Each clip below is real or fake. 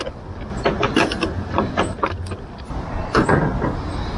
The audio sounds real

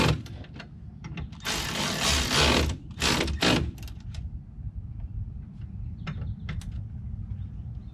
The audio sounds real